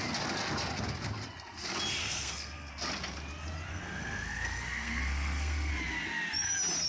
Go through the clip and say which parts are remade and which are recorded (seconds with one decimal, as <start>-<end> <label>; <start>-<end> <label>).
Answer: 0.0-2.0 recorded; 2.0-2.7 remade; 2.7-3.7 recorded; 3.7-5.7 remade; 5.7-6.9 recorded